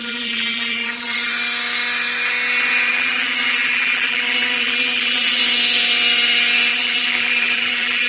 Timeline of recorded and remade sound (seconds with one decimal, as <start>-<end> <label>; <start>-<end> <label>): 0.0-1.3 remade; 1.3-2.9 recorded; 2.9-5.4 remade; 5.4-6.7 recorded; 6.7-8.1 remade